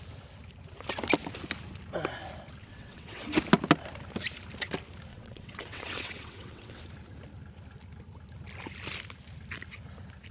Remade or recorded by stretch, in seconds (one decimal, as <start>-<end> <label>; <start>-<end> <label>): 0.0-2.6 recorded; 2.6-3.4 remade; 3.4-5.1 recorded; 5.1-6.8 remade; 6.8-10.3 recorded